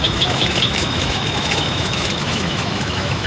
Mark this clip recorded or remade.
remade